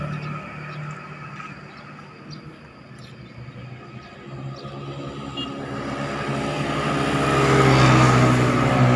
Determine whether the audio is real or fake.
real